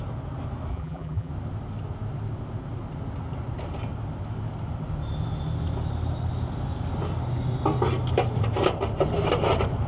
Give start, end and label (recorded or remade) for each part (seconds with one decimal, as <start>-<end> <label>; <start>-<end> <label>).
0.0-0.7 recorded; 0.7-1.3 remade; 1.3-9.9 recorded